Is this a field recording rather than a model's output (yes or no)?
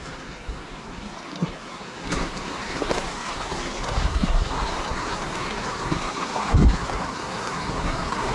no